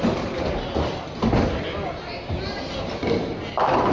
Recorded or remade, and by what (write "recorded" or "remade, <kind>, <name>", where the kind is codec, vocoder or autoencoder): recorded